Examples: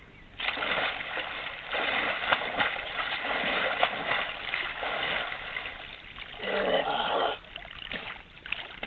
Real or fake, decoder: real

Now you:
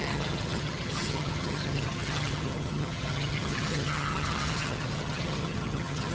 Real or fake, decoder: fake, vocoder, HiFi-GAN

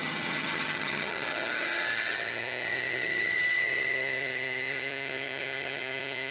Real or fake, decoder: fake, vocoder, HiFi-GAN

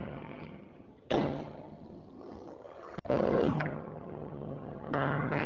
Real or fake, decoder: fake, vocoder, HiFi-GAN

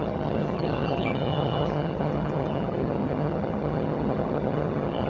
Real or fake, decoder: fake, vocoder, HiFi-GAN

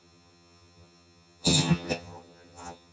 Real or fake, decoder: fake, vocoder, HiFi-GAN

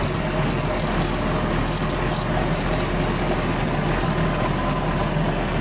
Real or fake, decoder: real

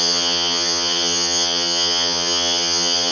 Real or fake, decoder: fake, vocoder, HiFi-GAN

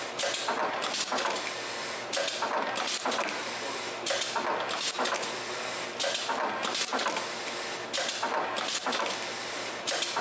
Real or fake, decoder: real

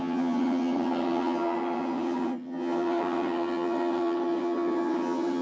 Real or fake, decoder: fake, vocoder, HiFi-GAN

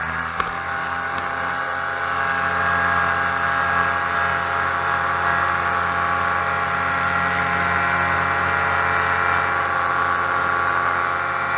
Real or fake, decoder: real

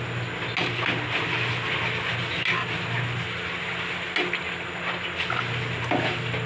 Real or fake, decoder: real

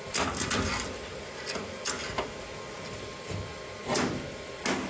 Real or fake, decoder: real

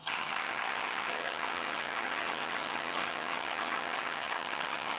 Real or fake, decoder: fake, vocoder, HiFi-GAN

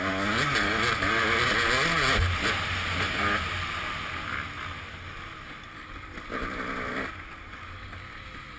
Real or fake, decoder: real